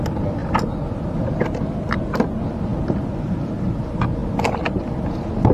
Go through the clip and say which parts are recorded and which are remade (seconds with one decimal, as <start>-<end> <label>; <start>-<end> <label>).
0.0-5.5 recorded